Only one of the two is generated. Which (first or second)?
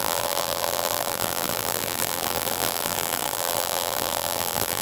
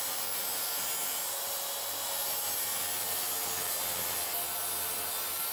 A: first